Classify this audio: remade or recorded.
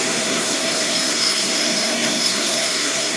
remade